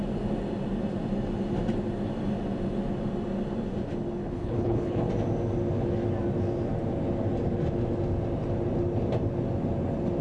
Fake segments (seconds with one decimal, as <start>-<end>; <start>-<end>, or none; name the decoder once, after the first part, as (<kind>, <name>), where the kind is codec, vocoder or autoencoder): 4.2-5.1 (codec, HILCodec)